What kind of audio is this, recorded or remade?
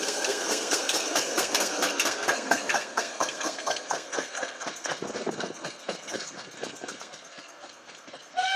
remade